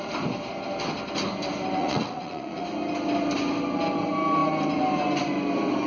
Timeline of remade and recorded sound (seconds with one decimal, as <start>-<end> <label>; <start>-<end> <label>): 0.0-1.8 recorded; 1.8-2.6 remade; 2.6-5.9 recorded